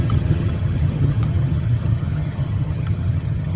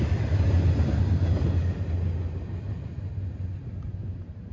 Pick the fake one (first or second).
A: first